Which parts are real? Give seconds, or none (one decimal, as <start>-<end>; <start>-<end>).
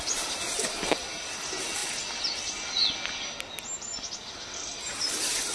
0.0-5.5